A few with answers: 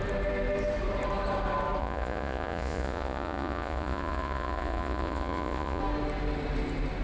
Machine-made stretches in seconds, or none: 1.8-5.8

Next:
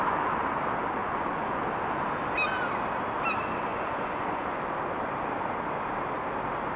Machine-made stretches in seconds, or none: 1.0-1.6; 3.7-4.6

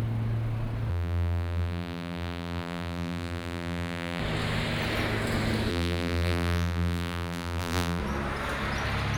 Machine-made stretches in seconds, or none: 0.9-4.2; 5.7-8.0

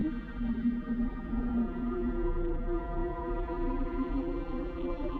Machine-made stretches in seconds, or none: 0.0-5.2